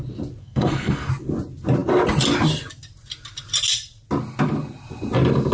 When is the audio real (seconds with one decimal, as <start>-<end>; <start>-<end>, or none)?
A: 0.0-0.4; 1.1-5.5